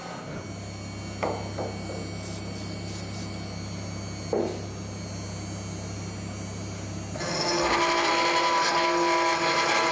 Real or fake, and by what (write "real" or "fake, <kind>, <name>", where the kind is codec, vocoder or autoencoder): real